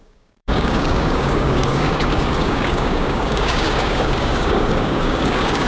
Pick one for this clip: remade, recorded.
remade